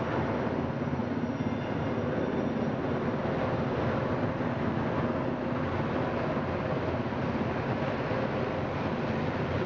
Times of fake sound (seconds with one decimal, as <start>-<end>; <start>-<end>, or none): none